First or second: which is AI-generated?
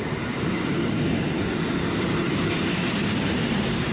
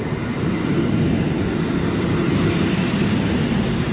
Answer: first